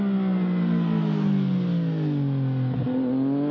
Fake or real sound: real